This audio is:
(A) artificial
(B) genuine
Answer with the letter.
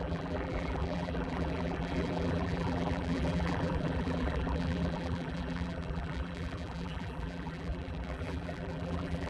A